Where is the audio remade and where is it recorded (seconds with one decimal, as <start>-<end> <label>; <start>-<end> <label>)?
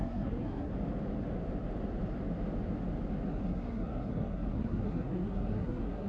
0.0-0.7 remade; 0.7-3.4 recorded; 3.4-6.1 remade